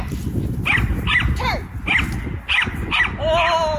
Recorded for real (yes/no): yes